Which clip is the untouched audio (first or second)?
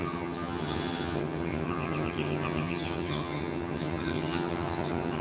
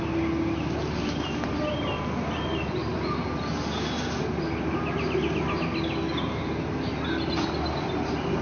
second